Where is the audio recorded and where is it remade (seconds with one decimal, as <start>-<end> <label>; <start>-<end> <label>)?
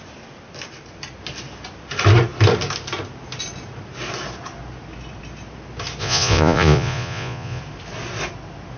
0.0-6.0 recorded; 6.0-7.6 remade; 7.6-8.8 recorded